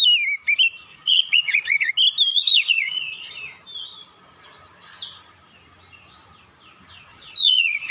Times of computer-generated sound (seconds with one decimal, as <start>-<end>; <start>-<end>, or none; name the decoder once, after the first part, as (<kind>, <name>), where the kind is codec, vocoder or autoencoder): 0.9-1.9 (vocoder, Vocos); 2.3-3.3; 7.1-7.9

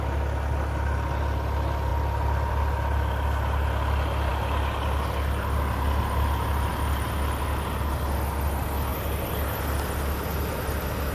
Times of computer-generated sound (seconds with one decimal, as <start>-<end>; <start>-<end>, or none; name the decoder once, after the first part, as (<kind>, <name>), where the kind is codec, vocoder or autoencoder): none

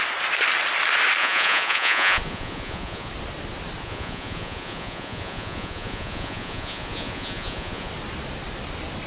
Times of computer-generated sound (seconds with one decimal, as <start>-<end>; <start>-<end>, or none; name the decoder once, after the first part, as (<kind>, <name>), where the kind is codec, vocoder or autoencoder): 1.2-3.1 (vocoder, Vocos); 3.8-7.9

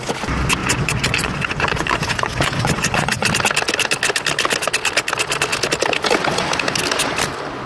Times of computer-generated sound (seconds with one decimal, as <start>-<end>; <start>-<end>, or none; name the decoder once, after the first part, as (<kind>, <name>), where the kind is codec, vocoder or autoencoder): 0.6-3.3 (vocoder, Vocos)

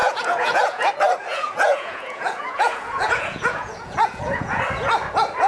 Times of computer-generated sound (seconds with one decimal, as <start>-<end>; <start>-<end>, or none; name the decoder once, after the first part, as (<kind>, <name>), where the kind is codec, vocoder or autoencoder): 0.0-0.9 (vocoder, Vocos); 1.3-4.6

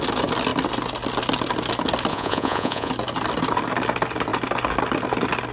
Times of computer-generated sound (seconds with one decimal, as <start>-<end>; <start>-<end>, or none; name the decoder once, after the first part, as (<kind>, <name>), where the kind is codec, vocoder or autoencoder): 2.1-2.9 (vocoder, Vocos)

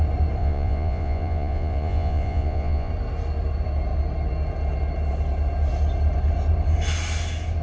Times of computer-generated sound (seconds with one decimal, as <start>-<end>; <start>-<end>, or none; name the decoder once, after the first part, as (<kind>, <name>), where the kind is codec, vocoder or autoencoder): 0.4-2.9 (vocoder, Vocos)